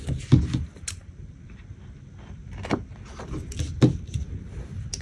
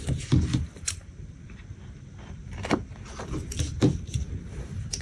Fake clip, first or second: second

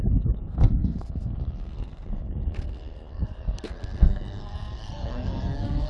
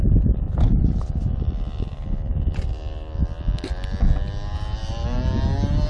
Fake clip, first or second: first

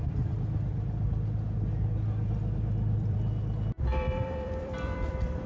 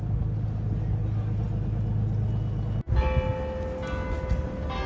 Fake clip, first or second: first